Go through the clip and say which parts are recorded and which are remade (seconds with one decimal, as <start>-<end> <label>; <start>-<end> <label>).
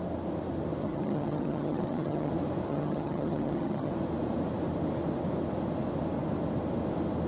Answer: 0.0-0.8 recorded; 0.8-2.3 remade; 2.3-2.7 recorded; 2.7-3.9 remade; 3.9-7.3 recorded